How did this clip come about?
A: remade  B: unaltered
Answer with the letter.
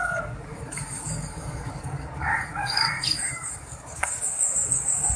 A